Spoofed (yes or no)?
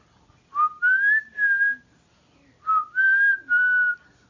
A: no